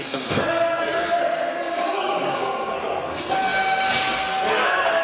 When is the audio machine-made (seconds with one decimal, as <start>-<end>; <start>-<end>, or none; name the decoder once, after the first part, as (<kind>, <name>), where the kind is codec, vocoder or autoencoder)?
0.0-5.0 (codec, SNAC)